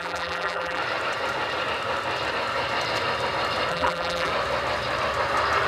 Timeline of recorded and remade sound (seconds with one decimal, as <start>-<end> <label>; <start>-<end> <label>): 0.0-0.8 remade; 0.8-3.7 recorded; 3.7-4.3 remade; 4.3-5.7 recorded

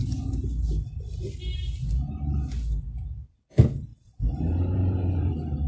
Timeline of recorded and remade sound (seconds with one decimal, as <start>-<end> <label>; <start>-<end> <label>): 0.0-3.9 recorded; 3.9-5.7 remade

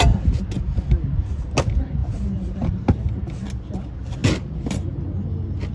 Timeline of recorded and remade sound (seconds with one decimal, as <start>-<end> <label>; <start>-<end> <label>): 0.0-5.7 recorded

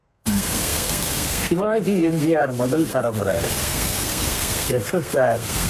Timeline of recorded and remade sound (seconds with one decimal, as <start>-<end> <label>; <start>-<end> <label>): 0.0-5.7 remade

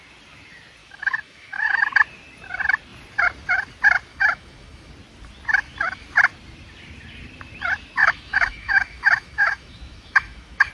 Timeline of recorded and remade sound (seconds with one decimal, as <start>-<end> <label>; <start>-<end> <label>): 0.0-0.8 recorded; 0.8-1.8 remade; 1.8-4.1 recorded; 4.1-4.9 remade; 4.9-8.0 recorded; 8.0-10.7 remade